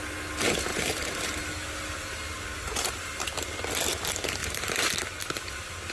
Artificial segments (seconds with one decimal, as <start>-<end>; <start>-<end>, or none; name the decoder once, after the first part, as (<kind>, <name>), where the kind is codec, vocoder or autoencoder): 0.7-1.4 (vocoder, BigVGAN v2); 2.5-3.3; 4.4-4.9